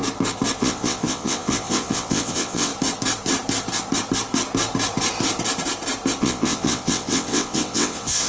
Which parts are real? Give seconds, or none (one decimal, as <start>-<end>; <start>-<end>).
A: 0.0-0.6; 2.7-6.2